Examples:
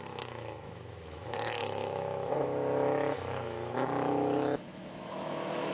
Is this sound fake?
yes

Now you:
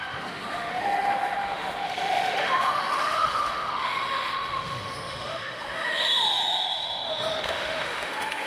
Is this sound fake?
yes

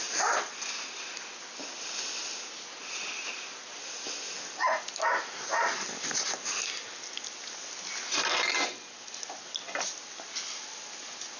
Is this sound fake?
no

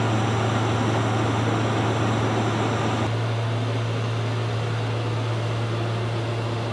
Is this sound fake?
no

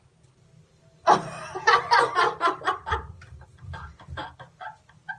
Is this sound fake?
no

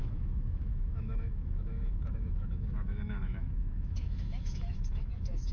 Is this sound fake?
yes